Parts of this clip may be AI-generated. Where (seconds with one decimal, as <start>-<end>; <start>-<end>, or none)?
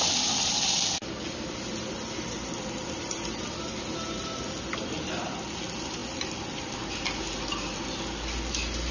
none